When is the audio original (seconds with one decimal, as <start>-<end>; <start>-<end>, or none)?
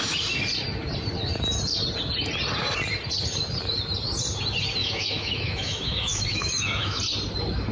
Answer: 0.0-4.8; 7.0-7.7